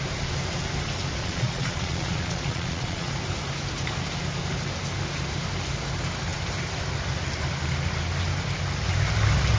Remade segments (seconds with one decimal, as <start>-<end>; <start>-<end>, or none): 1.2-3.1